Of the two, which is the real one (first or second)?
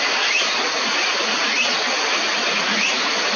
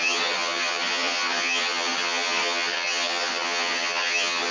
first